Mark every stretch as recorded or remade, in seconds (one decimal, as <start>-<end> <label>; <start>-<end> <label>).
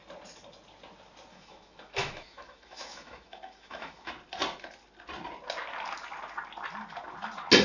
0.0-1.3 recorded; 1.3-4.1 remade; 4.1-7.6 recorded